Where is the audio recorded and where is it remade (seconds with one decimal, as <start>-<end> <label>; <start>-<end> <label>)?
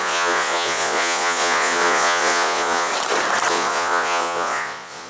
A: 0.0-2.9 remade; 2.9-3.5 recorded; 3.5-5.1 remade